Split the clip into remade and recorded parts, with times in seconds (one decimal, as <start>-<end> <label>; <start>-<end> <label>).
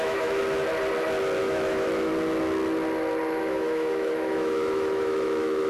0.0-0.4 remade; 0.4-1.4 recorded; 1.4-2.1 remade; 2.1-3.4 recorded; 3.4-5.7 remade